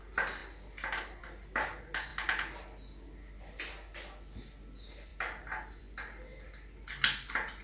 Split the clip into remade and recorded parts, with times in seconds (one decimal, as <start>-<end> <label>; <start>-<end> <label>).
0.0-7.6 recorded